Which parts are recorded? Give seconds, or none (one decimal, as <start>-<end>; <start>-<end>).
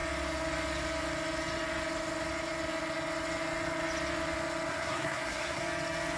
0.0-4.7; 5.6-6.2